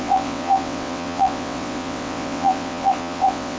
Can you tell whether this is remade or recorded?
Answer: remade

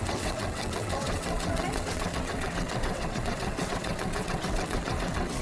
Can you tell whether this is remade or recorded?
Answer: remade